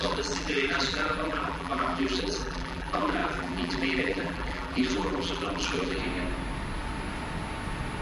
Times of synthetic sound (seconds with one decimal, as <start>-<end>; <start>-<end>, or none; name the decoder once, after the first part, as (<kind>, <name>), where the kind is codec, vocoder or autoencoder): 0.0-6.0 (vocoder, BigVGAN v2)